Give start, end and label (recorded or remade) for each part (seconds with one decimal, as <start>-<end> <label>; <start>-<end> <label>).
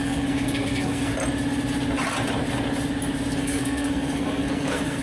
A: 0.0-1.1 remade; 1.1-3.4 recorded; 3.4-5.0 remade